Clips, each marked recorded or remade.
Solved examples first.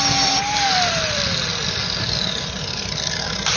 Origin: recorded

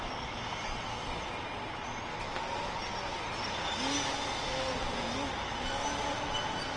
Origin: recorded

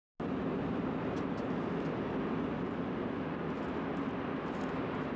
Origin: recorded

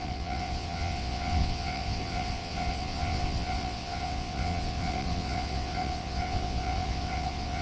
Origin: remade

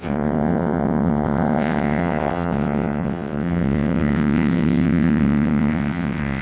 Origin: remade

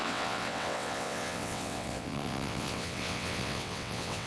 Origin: remade